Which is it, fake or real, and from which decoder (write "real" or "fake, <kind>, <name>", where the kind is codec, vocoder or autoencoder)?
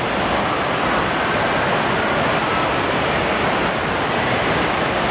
real